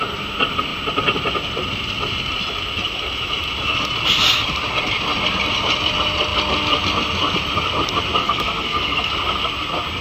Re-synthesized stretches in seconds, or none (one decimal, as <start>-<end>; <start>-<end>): 8.2-9.1